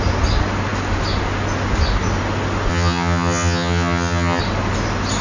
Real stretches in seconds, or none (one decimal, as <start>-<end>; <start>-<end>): 0.0-2.7; 4.4-5.2